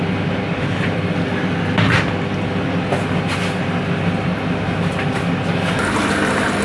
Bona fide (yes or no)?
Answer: yes